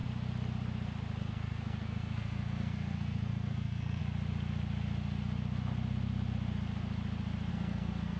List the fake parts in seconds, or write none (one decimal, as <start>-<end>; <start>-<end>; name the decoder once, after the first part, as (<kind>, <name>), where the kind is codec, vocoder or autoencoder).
1.2-4.0 (codec, SNAC); 7.5-8.2